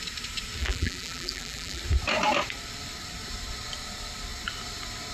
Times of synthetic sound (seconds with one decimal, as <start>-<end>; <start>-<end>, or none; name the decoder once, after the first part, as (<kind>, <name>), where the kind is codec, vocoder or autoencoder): 0.6-1.8 (vocoder, BigVGAN v2)